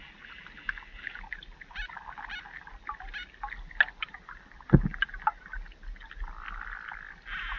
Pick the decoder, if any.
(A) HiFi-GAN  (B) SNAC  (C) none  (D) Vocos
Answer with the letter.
C